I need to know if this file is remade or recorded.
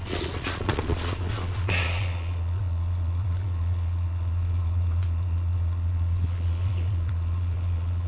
remade